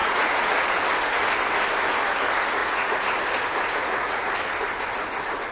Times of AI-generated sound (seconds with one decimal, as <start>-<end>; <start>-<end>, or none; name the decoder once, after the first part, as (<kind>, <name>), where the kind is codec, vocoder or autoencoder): 0.0-0.7 (vocoder, Vocos); 2.6-3.2; 3.8-4.3